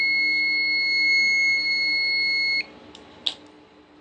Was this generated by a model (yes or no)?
no